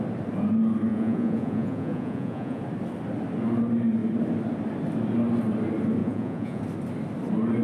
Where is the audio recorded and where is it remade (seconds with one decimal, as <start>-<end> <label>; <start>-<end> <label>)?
0.0-0.9 recorded; 0.9-2.6 remade; 2.6-6.0 recorded; 6.0-6.6 remade; 6.6-7.6 recorded